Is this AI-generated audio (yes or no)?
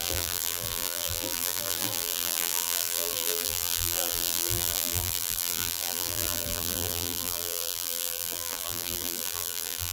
yes